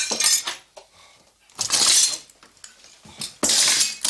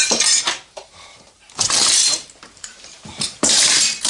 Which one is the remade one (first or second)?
second